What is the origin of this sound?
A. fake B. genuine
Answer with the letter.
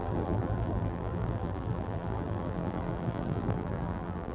A